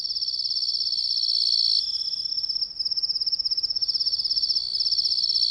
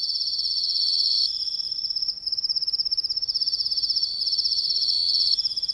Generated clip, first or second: second